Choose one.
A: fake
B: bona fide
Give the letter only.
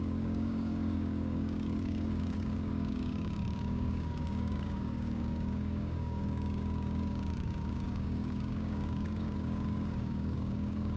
A